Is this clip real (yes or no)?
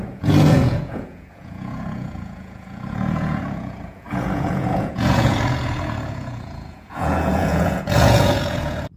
no